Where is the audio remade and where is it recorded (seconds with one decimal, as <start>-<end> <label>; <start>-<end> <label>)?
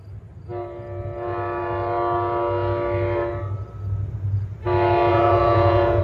0.0-5.1 recorded; 5.1-6.0 remade